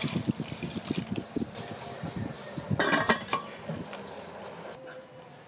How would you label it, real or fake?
real